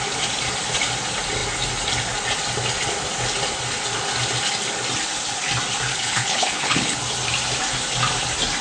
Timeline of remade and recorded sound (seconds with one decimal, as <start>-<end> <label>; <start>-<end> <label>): 0.0-5.9 recorded; 5.9-7.0 remade; 7.0-8.6 recorded

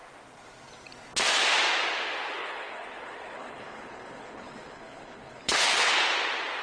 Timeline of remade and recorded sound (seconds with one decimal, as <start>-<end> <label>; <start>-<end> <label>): 0.0-2.4 recorded; 2.4-5.9 remade; 5.9-6.6 recorded

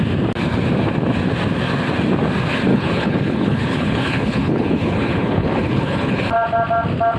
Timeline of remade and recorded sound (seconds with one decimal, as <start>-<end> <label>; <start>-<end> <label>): 0.0-2.7 recorded; 2.7-6.2 remade; 6.2-7.2 recorded

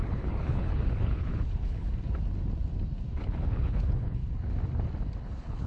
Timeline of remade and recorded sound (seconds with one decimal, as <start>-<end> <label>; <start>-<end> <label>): 0.0-1.9 remade; 1.9-3.2 recorded; 3.2-4.2 remade; 4.2-5.2 recorded; 5.2-5.7 remade